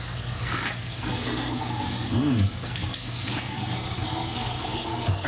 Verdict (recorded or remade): remade